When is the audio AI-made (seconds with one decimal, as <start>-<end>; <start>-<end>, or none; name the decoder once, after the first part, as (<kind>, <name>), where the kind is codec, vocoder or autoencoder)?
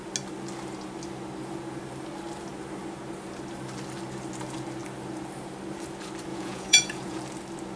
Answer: 6.3-7.2 (vocoder, Vocos)